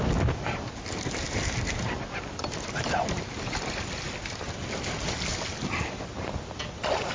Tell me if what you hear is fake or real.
real